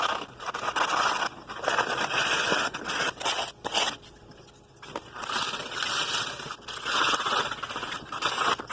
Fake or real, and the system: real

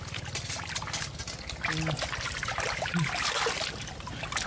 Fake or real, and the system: real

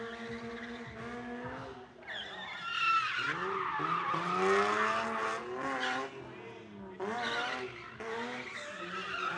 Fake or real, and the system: real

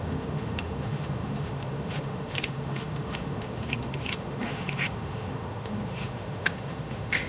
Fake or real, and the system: fake, autoencoder, DAC-VAE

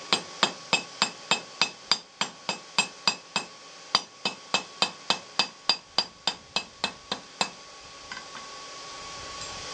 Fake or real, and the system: real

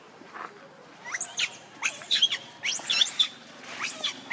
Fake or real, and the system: real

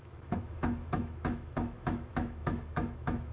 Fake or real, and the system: fake, autoencoder, DAC-VAE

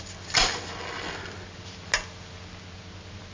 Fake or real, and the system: real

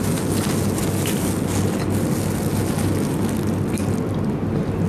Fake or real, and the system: real